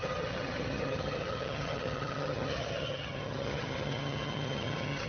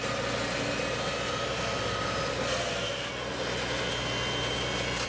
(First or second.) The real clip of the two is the second